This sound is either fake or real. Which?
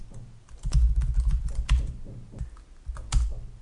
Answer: real